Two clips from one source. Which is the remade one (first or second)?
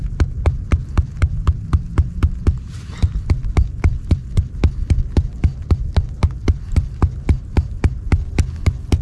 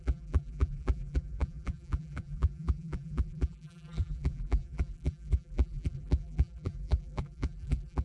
second